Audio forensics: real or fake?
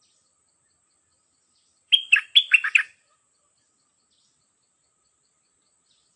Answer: real